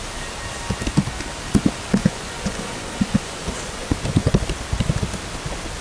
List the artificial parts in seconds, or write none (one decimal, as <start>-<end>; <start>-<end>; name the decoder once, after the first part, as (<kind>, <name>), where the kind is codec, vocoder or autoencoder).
2.0-4.3 (vocoder, Vocos)